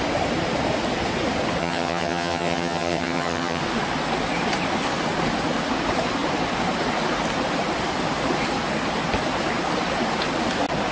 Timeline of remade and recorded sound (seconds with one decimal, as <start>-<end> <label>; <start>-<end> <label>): 0.0-1.6 recorded; 1.6-3.6 remade; 3.6-10.9 recorded

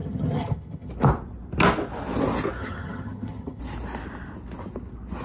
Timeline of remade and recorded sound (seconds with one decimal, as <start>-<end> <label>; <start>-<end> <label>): 0.0-0.9 remade; 0.9-2.6 recorded; 2.6-3.6 remade; 3.6-5.2 recorded

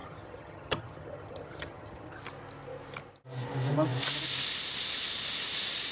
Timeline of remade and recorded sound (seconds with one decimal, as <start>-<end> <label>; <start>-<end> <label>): 0.0-2.2 remade; 2.2-5.9 recorded

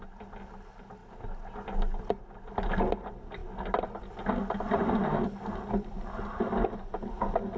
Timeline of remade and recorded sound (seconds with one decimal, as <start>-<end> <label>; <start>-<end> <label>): 0.0-7.6 recorded